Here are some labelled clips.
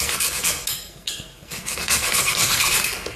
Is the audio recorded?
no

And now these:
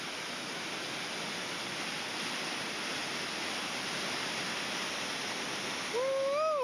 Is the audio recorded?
yes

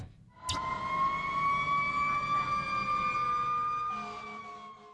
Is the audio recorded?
yes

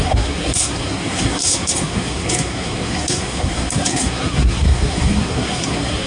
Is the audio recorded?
no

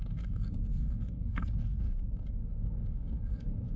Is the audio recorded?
no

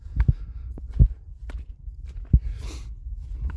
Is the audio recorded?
yes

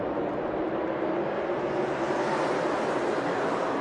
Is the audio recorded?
yes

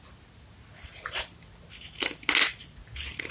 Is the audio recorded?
yes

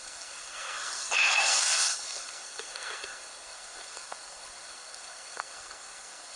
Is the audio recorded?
no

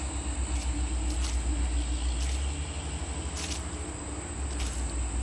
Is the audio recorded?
yes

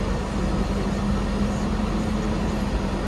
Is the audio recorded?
yes